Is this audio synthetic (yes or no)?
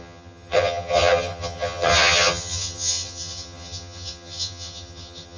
yes